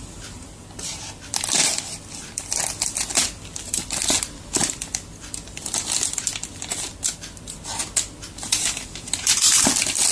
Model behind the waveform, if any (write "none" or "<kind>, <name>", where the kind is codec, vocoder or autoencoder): none